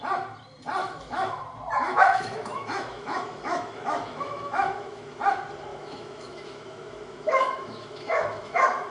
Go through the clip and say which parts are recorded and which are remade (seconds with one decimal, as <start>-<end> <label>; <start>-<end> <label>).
0.0-0.8 recorded; 0.8-1.4 remade; 1.4-1.8 recorded; 1.8-5.2 remade; 5.2-5.7 recorded; 5.7-8.9 remade